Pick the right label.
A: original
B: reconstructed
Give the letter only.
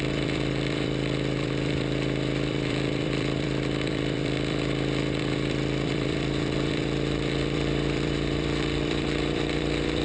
B